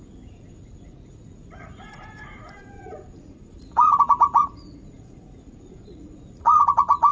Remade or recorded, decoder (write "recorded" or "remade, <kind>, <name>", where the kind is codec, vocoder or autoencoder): remade, vocoder, Vocos